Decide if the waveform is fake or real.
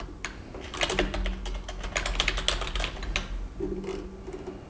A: real